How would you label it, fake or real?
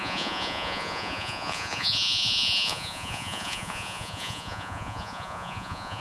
fake